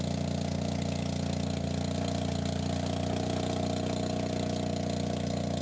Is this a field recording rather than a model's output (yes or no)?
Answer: yes